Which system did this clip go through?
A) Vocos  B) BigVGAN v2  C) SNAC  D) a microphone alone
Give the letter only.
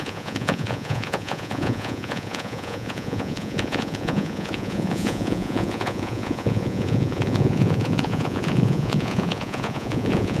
A